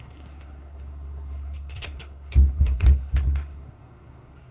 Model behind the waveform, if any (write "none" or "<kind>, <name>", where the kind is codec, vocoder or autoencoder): codec, SNAC